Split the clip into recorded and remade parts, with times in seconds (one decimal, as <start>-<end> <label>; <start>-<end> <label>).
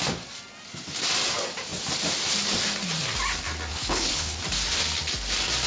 0.0-3.7 recorded; 3.7-4.4 remade; 4.4-5.7 recorded